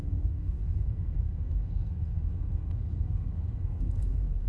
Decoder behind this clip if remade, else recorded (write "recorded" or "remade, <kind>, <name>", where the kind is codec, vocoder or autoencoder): remade, codec, SNAC